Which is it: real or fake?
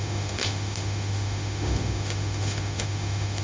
fake